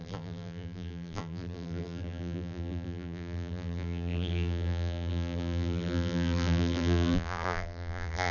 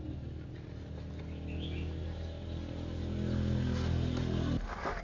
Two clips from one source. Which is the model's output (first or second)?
first